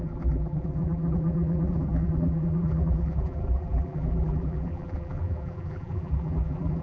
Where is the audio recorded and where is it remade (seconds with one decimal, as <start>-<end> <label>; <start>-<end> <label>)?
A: 0.0-6.8 remade